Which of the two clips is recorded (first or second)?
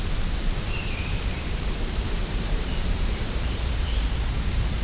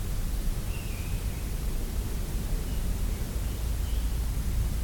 second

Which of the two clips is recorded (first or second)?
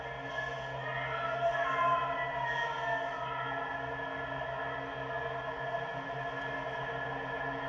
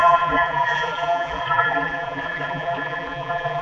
first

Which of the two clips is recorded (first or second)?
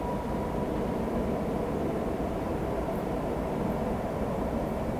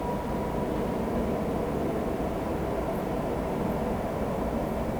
second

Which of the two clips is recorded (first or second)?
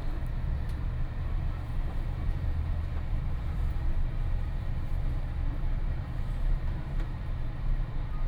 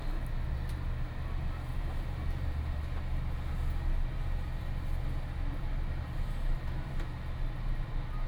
second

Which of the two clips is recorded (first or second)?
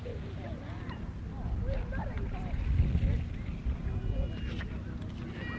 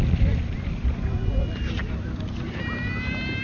first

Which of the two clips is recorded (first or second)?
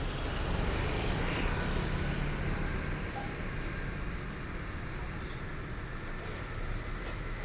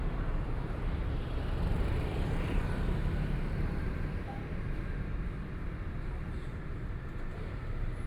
first